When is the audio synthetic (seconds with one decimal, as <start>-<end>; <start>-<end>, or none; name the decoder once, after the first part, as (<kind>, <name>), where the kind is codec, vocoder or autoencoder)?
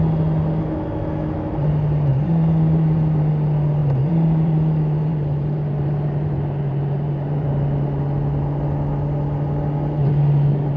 2.1-3.3 (vocoder, BigVGAN v2); 3.8-7.5